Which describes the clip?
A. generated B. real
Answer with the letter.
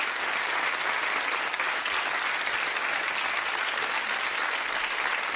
B